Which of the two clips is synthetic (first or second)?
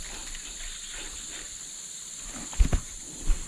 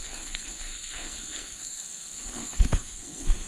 second